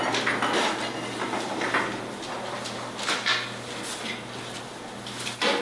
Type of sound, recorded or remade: recorded